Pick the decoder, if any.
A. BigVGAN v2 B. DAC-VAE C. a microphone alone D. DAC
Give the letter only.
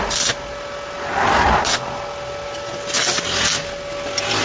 C